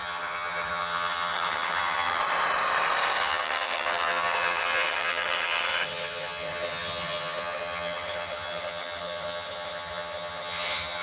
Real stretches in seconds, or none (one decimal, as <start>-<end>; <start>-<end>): 2.2-3.2